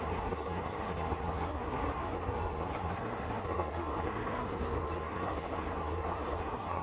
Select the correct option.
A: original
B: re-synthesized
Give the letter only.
B